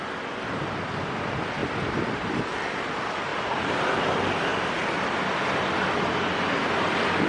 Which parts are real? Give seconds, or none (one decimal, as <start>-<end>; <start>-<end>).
0.0-1.6; 2.4-3.3; 4.1-7.3